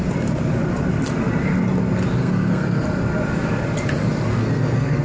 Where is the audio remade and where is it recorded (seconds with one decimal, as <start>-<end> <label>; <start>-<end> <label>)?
0.0-2.2 recorded; 2.2-2.8 remade; 2.8-4.3 recorded; 4.3-5.0 remade